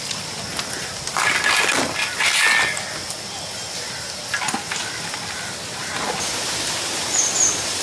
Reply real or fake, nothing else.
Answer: real